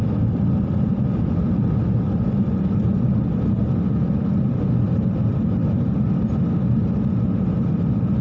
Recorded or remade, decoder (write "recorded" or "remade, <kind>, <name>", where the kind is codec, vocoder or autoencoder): remade, vocoder, BigVGAN v2